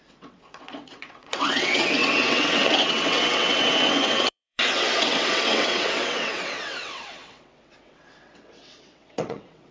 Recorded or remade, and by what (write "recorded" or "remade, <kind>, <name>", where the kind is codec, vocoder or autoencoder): remade, vocoder, WaveNeXt